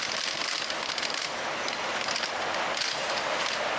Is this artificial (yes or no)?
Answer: no